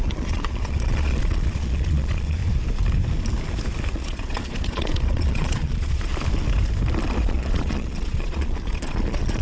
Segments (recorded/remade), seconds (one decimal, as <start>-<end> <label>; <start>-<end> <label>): 0.0-2.4 remade; 2.4-3.9 recorded; 3.9-6.1 remade; 6.1-7.2 recorded; 7.2-9.4 remade